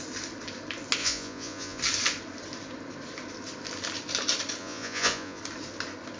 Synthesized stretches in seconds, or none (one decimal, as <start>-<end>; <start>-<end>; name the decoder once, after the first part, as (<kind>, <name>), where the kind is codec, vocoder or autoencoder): 1.0-1.8 (vocoder, Vocos); 4.6-5.4